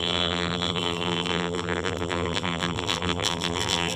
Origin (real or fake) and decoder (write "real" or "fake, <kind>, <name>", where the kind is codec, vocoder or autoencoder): fake, vocoder, BigVGAN v2